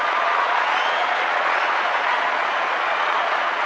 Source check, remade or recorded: remade